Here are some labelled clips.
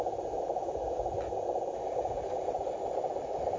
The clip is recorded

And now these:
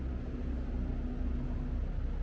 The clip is recorded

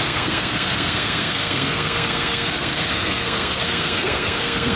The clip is remade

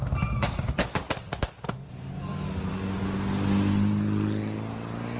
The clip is recorded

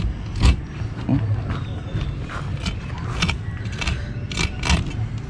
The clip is recorded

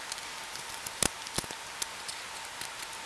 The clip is recorded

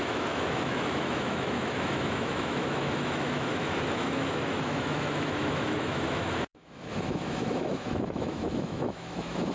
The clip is remade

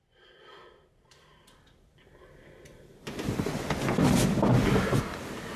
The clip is recorded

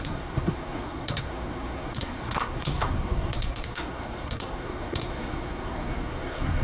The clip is remade